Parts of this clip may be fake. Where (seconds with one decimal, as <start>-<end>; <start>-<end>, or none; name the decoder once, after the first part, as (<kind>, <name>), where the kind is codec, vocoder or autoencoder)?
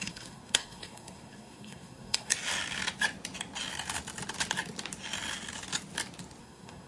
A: 0.0-2.3 (codec, SNAC); 6.4-6.9